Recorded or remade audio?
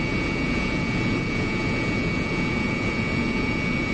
remade